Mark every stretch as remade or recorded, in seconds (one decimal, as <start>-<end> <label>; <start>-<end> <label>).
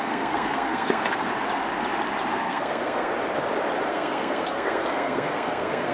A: 0.0-1.3 remade; 1.3-2.3 recorded; 2.3-3.1 remade; 3.1-3.9 recorded; 3.9-5.9 remade